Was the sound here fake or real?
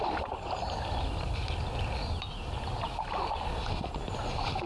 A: real